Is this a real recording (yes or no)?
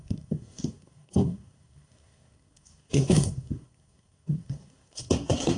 no